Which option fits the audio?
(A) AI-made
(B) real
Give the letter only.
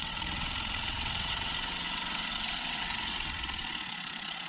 A